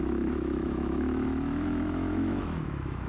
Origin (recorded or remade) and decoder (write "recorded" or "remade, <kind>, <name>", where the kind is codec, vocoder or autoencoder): remade, autoencoder, DAC-VAE